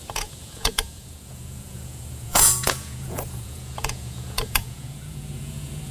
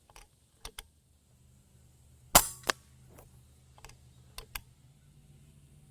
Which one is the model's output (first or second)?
first